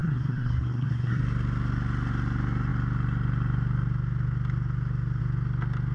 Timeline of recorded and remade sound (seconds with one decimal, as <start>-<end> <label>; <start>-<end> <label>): 0.0-1.2 remade; 1.2-5.9 recorded